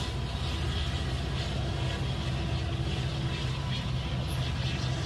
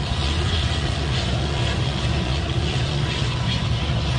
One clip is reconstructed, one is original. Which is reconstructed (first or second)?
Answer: second